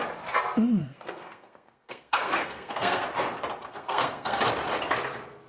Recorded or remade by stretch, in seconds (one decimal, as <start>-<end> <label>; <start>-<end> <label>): 0.0-0.8 recorded; 0.8-3.0 remade; 3.0-3.7 recorded; 3.7-4.4 remade; 4.4-5.5 recorded